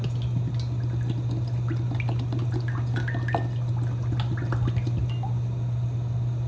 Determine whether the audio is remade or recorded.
recorded